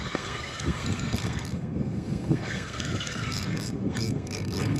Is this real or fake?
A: fake